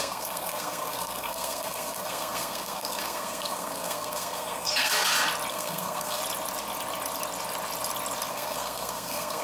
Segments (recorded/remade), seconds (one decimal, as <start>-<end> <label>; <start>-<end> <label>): 0.0-4.9 remade; 4.9-5.5 recorded; 5.5-6.2 remade; 6.2-8.3 recorded; 8.3-9.4 remade